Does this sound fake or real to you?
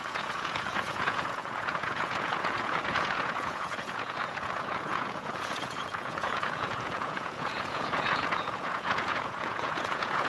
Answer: fake